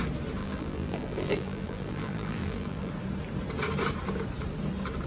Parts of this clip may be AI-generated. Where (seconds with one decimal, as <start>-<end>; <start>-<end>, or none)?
0.4-2.9